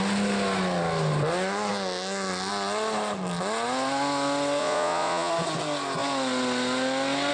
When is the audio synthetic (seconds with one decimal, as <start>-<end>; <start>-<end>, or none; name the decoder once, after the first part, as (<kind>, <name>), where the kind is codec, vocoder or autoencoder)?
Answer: 4.6-5.3 (vocoder, Vocos)